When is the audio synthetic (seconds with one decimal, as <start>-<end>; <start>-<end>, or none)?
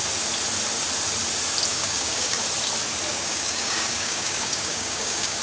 1.7-2.4; 3.1-5.4